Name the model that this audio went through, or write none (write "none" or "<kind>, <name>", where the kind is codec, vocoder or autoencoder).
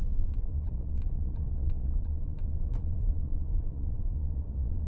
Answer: vocoder, Vocos